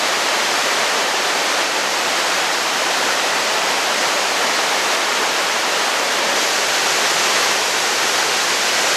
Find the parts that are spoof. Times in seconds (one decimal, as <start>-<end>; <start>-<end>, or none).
0.6-4.3